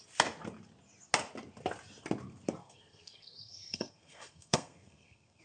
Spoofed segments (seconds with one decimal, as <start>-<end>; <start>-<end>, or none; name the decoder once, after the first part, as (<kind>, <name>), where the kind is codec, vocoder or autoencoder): 2.6-5.4 (codec, SNAC)